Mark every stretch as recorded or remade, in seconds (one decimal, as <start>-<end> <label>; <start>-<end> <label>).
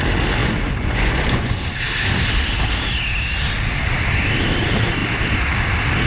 0.0-0.4 recorded; 0.4-1.5 remade; 1.5-6.1 recorded